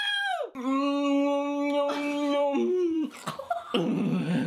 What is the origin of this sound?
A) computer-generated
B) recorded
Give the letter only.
A